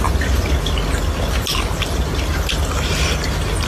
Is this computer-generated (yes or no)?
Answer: no